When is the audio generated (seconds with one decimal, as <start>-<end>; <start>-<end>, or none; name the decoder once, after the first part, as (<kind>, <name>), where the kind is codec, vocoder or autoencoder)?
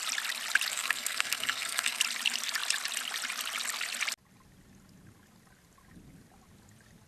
0.7-2.0 (codec, SNAC)